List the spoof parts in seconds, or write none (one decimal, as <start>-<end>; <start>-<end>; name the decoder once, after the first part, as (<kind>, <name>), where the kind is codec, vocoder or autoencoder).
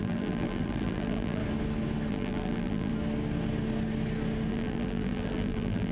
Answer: 0.0-1.4 (vocoder, BigVGAN v2); 2.1-2.9; 4.5-5.9